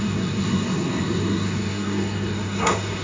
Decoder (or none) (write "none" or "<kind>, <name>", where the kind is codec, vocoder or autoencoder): codec, SNAC